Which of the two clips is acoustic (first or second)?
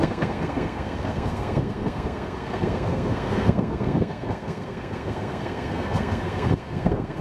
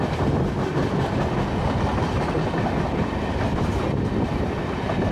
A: second